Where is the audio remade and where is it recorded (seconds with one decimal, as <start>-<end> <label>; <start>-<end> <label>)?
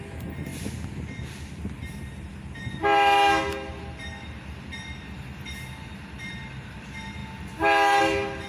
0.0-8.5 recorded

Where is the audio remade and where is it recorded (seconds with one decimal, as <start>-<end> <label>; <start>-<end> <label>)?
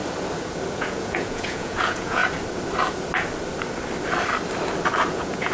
0.0-0.7 recorded; 0.7-2.2 remade; 2.2-5.1 recorded; 5.1-5.5 remade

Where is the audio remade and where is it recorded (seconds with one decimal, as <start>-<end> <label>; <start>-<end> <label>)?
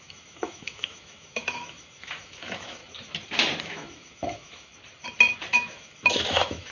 0.0-2.8 remade; 2.8-3.6 recorded; 3.6-4.7 remade; 4.7-5.5 recorded; 5.5-6.7 remade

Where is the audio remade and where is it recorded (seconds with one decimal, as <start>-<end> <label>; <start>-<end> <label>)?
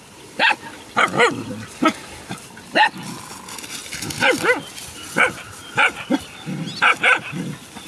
0.0-7.9 recorded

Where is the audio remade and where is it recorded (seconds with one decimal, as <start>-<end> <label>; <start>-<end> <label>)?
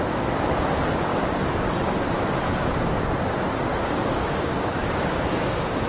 0.0-1.1 recorded; 1.1-1.7 remade; 1.7-3.7 recorded; 3.7-5.9 remade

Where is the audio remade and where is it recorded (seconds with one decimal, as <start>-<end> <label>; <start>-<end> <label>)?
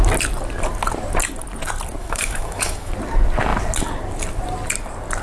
0.0-2.0 recorded; 2.0-2.9 remade; 2.9-5.2 recorded